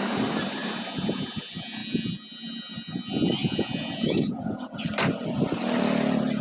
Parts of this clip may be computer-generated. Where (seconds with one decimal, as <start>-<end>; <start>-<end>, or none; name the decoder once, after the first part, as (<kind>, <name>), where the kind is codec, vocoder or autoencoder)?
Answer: 3.4-4.8 (vocoder, Vocos)